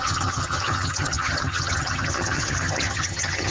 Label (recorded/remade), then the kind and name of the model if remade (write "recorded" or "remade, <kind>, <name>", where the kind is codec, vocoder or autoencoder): remade, vocoder, HiFi-GAN